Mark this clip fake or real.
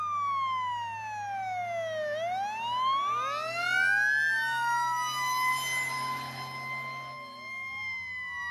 real